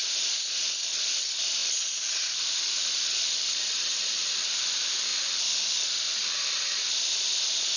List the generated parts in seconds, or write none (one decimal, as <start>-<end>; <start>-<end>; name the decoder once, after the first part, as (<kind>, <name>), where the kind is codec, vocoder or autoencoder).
none